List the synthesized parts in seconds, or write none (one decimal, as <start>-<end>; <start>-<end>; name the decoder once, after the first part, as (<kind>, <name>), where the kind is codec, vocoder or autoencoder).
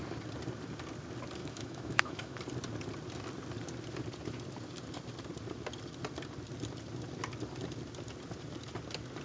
1.4-2.4 (autoencoder, DAC-VAE)